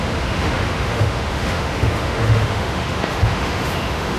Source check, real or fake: fake